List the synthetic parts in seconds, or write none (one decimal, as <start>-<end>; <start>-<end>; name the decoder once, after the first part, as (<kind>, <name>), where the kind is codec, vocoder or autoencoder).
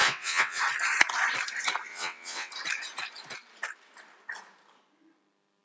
0.0-0.6 (vocoder, WaveNeXt); 1.9-2.5